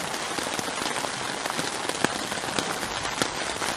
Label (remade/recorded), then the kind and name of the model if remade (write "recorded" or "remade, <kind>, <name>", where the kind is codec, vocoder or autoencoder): recorded